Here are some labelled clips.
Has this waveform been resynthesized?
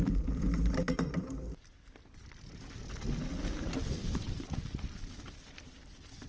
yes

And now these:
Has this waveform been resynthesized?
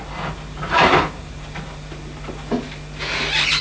no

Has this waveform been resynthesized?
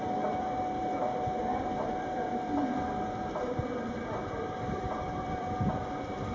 yes